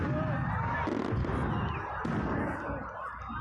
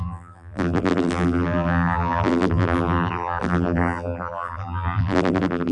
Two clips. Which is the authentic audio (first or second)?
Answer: first